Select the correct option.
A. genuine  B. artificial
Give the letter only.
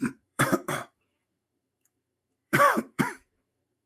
B